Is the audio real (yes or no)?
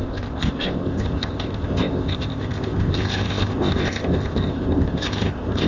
no